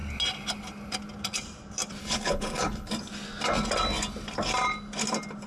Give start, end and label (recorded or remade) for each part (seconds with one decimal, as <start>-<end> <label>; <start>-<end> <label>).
0.0-2.0 recorded; 2.0-2.9 remade; 2.9-5.5 recorded

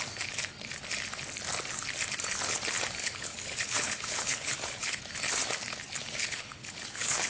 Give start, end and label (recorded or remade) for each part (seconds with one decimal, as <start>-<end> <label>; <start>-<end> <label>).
0.0-3.0 recorded; 3.0-5.0 remade; 5.0-6.2 recorded; 6.2-7.3 remade

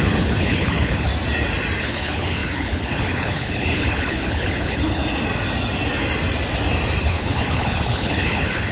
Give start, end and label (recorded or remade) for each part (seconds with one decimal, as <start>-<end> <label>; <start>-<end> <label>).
0.0-1.1 remade; 1.1-1.8 recorded; 1.8-5.0 remade; 5.0-7.0 recorded; 7.0-8.7 remade